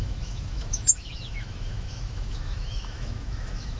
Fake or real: fake